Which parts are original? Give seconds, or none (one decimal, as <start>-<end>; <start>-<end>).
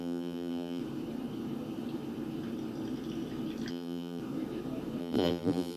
0.8-3.7; 4.2-5.0